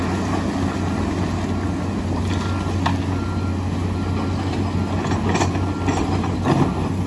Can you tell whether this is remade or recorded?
recorded